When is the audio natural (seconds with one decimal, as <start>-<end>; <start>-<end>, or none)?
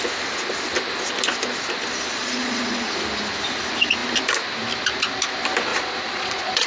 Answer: 0.0-2.1; 2.9-5.7